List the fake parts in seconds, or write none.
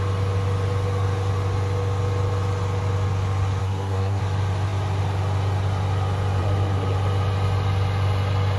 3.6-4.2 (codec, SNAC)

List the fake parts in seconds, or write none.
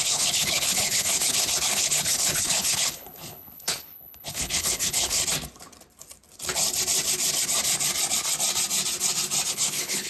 0.0-5.2 (codec, HILCodec); 9.5-10.1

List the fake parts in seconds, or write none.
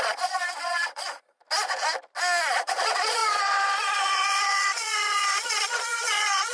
0.0-1.4 (vocoder, Vocos); 2.5-6.5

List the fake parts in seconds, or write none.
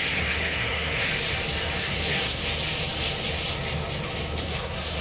0.0-1.1 (codec, SNAC); 1.8-2.4; 4.4-5.0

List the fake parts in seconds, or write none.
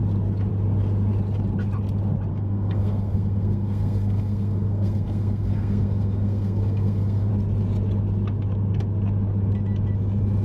2.3-7.3 (codec, SNAC)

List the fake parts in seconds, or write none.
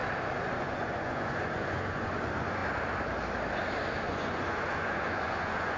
0.6-2.6 (vocoder, Vocos); 4.0-5.8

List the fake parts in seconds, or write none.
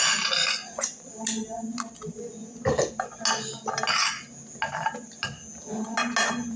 0.4-1.0 (vocoder, Vocos)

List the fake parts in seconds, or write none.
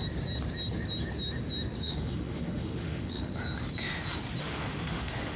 1.8-3.3 (autoencoder, DAC-VAE); 4.4-5.4